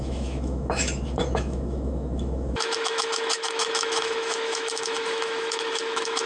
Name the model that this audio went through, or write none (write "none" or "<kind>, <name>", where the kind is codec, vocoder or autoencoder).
autoencoder, DAC-VAE